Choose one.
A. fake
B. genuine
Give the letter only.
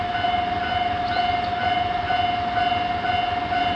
B